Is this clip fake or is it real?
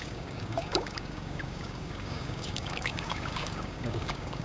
fake